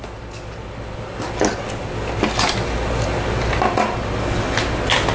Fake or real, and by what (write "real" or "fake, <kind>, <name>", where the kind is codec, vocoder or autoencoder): real